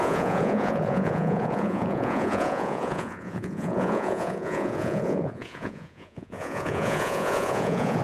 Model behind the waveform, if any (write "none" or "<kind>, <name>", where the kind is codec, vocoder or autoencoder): vocoder, Vocos